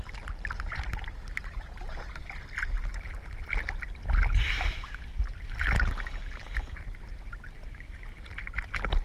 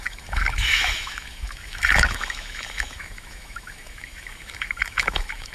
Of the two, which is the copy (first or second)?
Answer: second